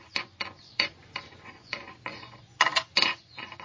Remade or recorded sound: remade